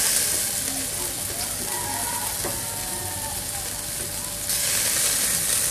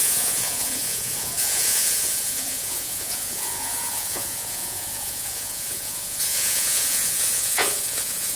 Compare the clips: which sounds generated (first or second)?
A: second